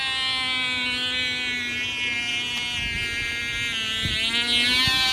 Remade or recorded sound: recorded